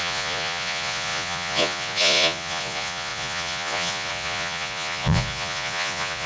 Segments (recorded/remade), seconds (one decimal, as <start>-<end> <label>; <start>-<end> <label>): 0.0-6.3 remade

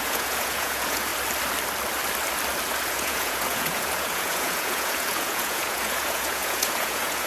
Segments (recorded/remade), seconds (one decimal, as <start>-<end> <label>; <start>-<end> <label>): 0.0-1.1 remade; 1.1-2.8 recorded; 2.8-7.3 remade

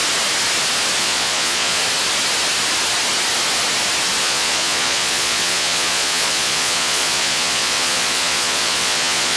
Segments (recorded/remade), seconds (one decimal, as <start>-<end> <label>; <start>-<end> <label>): 0.0-1.0 recorded; 1.0-1.8 remade; 1.8-4.2 recorded; 4.2-9.4 remade

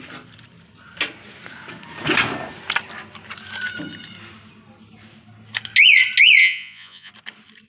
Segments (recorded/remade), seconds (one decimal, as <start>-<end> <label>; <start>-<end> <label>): 0.0-6.4 recorded; 6.4-7.1 remade; 7.1-7.7 recorded